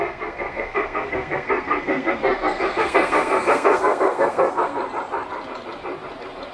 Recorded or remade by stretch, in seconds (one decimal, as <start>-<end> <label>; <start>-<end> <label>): 0.0-4.8 remade; 4.8-6.5 recorded